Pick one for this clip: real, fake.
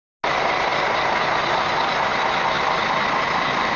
real